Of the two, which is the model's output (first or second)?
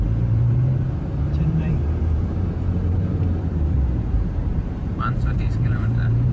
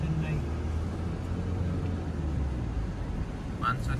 first